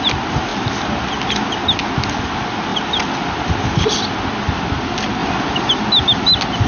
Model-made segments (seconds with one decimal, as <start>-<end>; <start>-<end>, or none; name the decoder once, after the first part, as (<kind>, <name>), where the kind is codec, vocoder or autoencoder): 0.5-1.5 (vocoder, BigVGAN v2); 2.7-3.4; 5.2-5.7